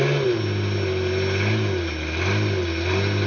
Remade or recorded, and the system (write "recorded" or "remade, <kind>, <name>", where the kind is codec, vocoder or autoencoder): recorded